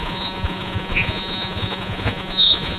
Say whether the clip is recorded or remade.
remade